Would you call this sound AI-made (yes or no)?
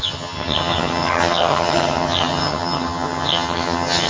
yes